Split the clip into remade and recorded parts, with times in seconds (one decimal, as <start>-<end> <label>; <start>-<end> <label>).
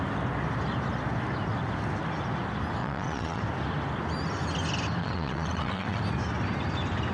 0.0-2.8 recorded; 2.8-3.4 remade; 3.4-5.0 recorded; 5.0-6.0 remade; 6.0-7.1 recorded